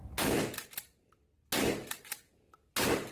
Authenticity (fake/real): real